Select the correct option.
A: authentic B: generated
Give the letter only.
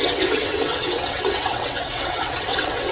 B